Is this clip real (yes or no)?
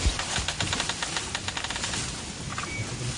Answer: yes